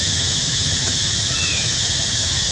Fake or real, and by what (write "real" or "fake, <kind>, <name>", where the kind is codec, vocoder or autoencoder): fake, autoencoder, DAC-VAE